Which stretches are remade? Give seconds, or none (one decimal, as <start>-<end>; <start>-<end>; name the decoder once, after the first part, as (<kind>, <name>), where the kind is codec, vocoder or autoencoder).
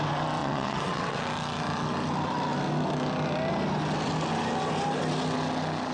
0.4-1.2 (vocoder, WaveNeXt)